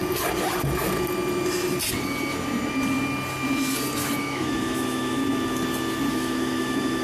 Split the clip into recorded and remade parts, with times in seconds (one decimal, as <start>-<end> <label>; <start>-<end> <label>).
0.0-4.2 recorded; 4.2-5.2 remade; 5.2-6.1 recorded; 6.1-7.0 remade

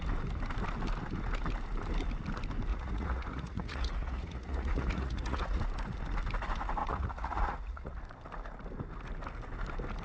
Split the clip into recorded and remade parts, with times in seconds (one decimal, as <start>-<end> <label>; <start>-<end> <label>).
0.0-2.7 recorded; 2.7-5.6 remade; 5.6-6.8 recorded; 6.8-8.0 remade; 8.0-10.0 recorded

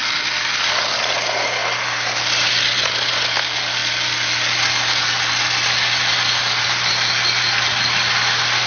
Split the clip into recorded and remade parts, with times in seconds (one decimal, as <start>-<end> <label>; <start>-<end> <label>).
0.0-8.7 recorded

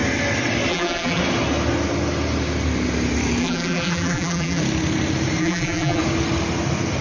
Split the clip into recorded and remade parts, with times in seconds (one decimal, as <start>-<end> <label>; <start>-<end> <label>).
0.0-0.7 recorded; 0.7-1.2 remade; 1.2-3.4 recorded; 3.4-4.6 remade; 4.6-5.4 recorded; 5.4-6.0 remade; 6.0-7.0 recorded

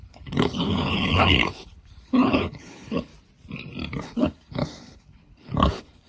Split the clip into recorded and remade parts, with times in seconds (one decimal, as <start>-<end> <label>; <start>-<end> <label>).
0.0-3.1 remade; 3.1-4.0 recorded; 4.0-6.1 remade

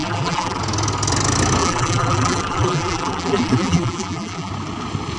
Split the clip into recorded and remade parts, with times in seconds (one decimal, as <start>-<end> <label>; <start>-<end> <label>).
0.0-0.6 remade; 0.6-1.6 recorded; 1.6-4.5 remade; 4.5-5.2 recorded

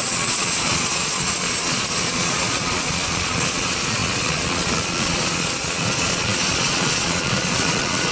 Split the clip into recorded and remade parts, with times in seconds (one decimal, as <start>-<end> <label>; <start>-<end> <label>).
0.0-8.1 remade

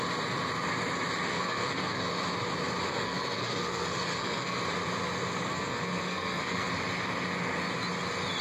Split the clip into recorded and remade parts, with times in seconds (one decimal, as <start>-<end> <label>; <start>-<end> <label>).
0.0-1.3 recorded; 1.3-2.1 remade; 2.1-2.9 recorded; 2.9-4.6 remade; 4.6-5.5 recorded; 5.5-6.7 remade; 6.7-8.4 recorded